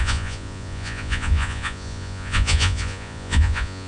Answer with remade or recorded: remade